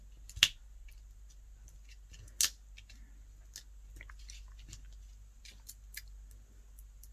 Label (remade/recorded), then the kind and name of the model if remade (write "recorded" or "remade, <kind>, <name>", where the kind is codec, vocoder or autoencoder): recorded